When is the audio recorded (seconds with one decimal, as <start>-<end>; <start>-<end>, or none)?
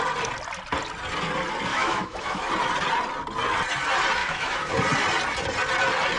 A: 0.0-1.7; 2.5-4.2; 4.7-6.2